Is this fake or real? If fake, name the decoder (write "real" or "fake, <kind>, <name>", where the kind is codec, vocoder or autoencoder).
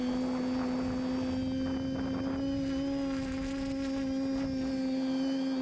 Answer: real